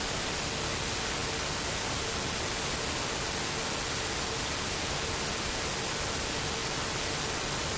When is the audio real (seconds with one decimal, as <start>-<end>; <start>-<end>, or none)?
0.0-6.6